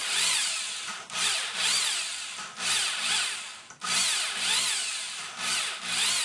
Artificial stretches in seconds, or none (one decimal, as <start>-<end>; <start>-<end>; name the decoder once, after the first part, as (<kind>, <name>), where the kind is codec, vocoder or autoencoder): 0.0-0.6 (vocoder, BigVGAN v2)